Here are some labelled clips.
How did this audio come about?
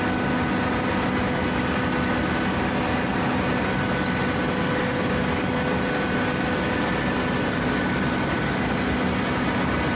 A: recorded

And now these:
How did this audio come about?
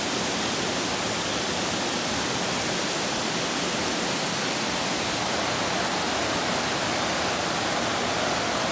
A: recorded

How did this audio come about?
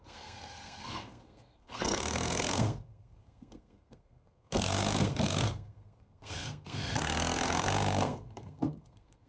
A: remade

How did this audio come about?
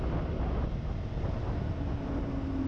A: recorded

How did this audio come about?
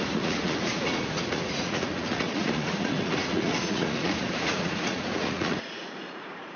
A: remade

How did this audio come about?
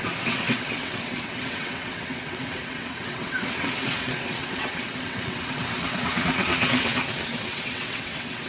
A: remade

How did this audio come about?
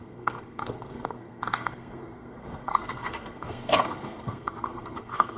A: remade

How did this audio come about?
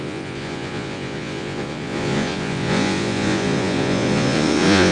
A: remade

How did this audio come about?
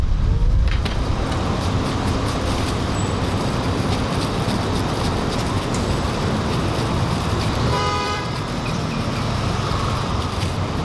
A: remade